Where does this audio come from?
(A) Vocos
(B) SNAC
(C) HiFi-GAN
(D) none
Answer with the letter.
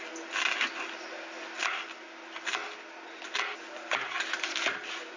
D